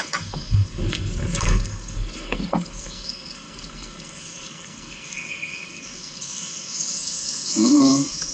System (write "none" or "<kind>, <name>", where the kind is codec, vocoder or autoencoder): codec, SNAC